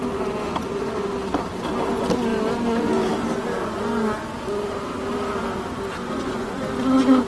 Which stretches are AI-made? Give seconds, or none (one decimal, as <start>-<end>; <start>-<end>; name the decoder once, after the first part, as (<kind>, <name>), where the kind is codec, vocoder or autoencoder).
6.0-6.6 (vocoder, Vocos)